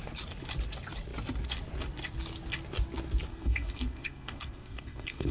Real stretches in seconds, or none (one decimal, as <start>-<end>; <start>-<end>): 0.0-3.3